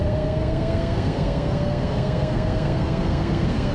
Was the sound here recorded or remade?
remade